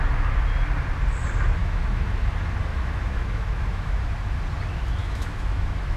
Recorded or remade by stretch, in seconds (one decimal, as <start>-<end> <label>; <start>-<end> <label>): 0.0-1.6 recorded; 1.6-2.3 remade; 2.3-2.7 recorded; 2.7-4.0 remade; 4.0-5.0 recorded; 5.0-6.0 remade